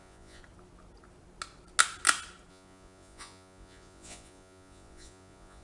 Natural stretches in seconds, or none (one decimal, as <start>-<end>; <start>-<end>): 0.4-2.5